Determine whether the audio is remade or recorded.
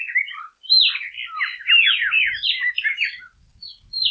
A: recorded